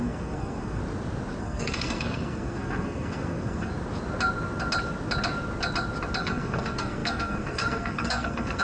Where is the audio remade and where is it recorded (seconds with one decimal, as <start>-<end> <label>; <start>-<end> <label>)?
0.0-0.8 remade; 0.8-1.4 recorded; 1.4-3.7 remade; 3.7-6.2 recorded; 6.2-8.6 remade